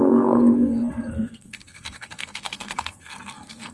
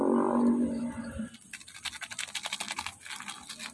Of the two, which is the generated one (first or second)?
first